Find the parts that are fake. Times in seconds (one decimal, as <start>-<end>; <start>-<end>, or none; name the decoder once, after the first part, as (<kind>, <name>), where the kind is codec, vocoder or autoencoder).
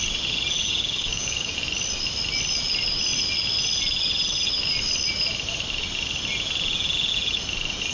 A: 0.6-1.5 (codec, DAC)